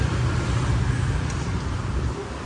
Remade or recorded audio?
recorded